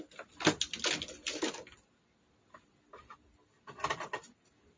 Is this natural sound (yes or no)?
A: yes